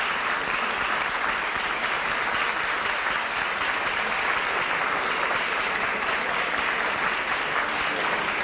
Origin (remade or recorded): recorded